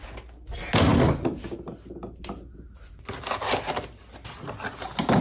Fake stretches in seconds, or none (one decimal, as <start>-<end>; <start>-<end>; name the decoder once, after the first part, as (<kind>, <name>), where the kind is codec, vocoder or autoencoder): none